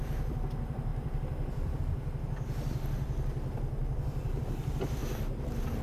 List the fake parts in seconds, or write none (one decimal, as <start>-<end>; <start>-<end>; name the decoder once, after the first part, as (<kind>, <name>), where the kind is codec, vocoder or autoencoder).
0.9-1.8 (vocoder, BigVGAN v2)